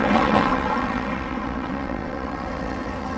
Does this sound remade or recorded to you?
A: remade